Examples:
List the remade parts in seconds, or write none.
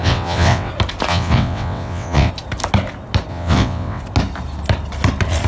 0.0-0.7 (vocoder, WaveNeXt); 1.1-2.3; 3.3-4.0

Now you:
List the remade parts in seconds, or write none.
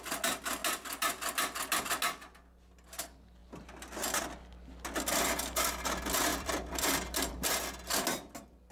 6.3-7.3 (vocoder, BigVGAN v2)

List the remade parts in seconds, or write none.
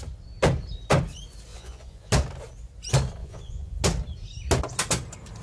1.5-2.1 (vocoder, Vocos); 3.2-3.8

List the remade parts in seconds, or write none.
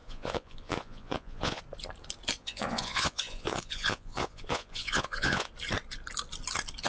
0.0-1.6 (vocoder, Vocos); 2.4-5.5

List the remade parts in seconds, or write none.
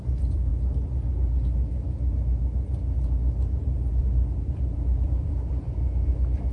0.0-0.5 (vocoder, BigVGAN v2); 4.0-6.5